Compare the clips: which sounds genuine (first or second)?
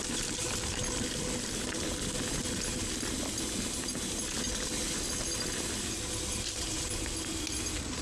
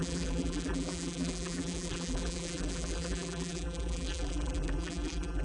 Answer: first